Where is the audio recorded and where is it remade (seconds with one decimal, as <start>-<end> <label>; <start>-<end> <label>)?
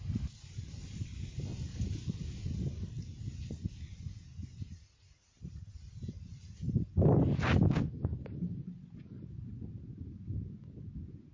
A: 0.0-11.3 recorded